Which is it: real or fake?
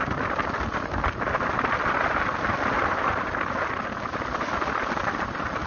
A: real